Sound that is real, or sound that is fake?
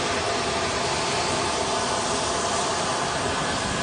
fake